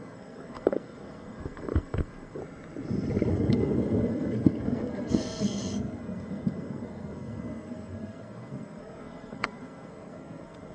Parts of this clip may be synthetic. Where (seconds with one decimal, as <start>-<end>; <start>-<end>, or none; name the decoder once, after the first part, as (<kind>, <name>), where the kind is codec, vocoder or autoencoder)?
0.0-2.4 (codec, SNAC); 3.3-10.7